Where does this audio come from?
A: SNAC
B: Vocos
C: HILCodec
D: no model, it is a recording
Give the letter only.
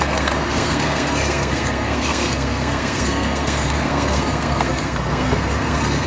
A